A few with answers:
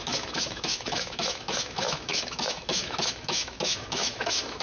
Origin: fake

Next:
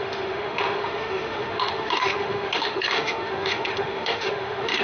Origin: fake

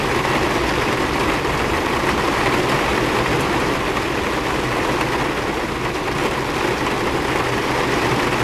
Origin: real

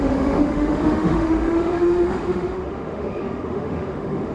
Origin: fake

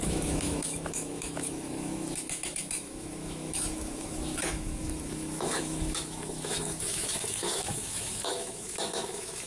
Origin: fake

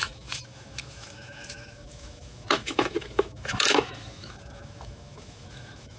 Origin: fake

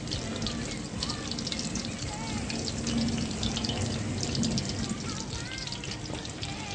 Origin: real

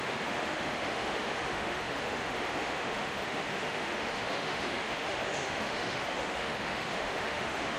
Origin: fake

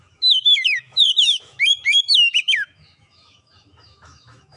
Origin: fake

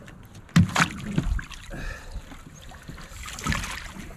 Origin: real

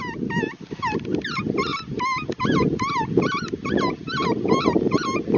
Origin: real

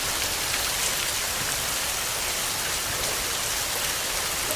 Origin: real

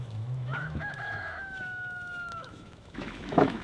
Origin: fake